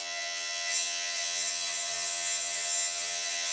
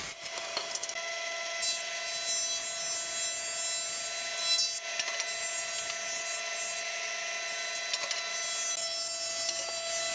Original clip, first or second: second